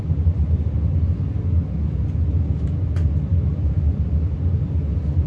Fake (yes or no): no